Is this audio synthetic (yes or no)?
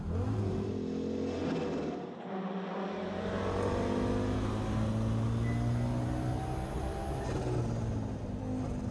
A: no